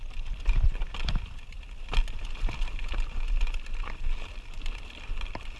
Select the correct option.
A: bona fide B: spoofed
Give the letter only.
A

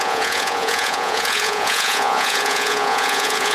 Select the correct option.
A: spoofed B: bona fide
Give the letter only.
A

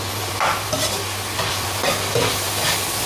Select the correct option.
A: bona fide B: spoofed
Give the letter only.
A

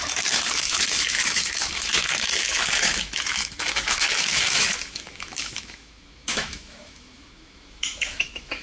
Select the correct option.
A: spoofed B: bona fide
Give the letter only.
A